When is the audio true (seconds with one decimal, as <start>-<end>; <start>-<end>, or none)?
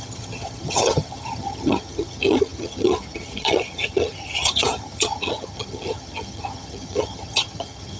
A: none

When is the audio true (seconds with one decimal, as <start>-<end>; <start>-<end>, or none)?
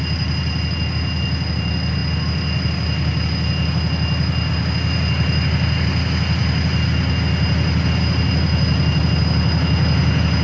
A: 0.0-10.4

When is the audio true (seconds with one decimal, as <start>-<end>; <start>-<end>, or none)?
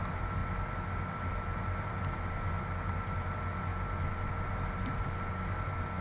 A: 0.0-6.0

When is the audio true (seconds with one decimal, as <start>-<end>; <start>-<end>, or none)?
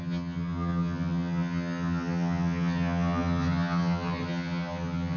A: none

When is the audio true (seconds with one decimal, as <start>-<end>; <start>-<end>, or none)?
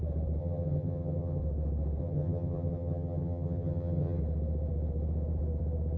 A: 0.0-0.4; 1.4-2.0; 4.2-6.0